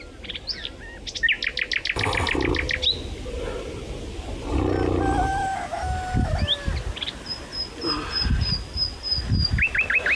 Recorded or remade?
recorded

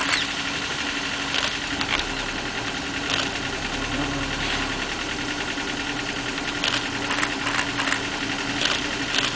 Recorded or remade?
recorded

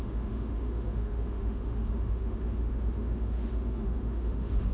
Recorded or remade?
remade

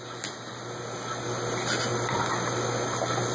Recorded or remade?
recorded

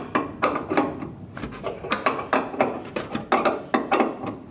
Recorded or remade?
recorded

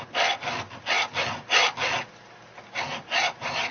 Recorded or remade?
recorded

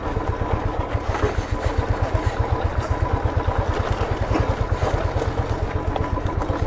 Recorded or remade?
recorded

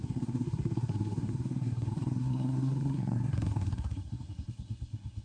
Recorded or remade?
remade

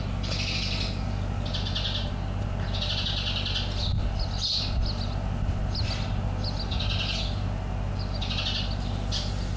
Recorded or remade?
recorded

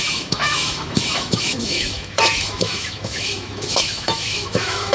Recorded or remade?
remade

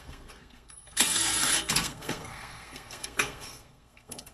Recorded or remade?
remade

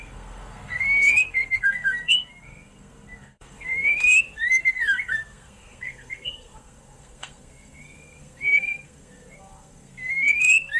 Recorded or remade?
remade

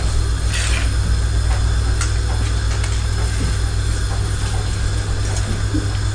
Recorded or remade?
recorded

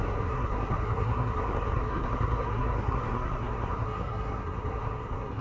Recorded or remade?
remade